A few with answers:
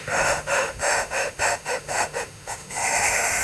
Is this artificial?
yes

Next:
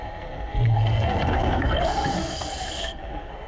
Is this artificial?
yes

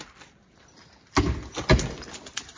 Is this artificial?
no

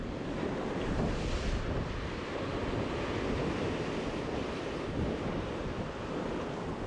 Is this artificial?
yes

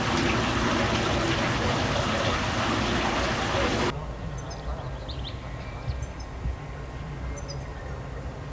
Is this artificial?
no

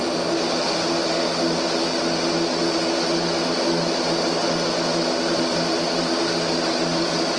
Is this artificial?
no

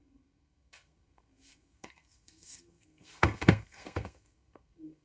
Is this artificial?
yes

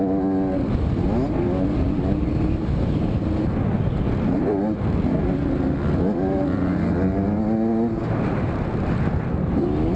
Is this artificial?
no